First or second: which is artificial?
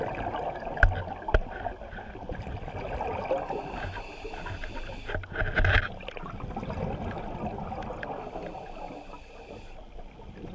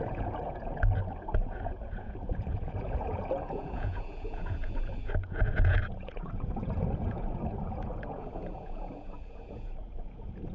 second